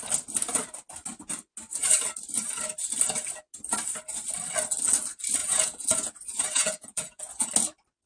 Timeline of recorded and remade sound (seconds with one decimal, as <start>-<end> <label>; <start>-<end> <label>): 0.0-5.4 recorded; 5.4-7.5 remade; 7.5-8.1 recorded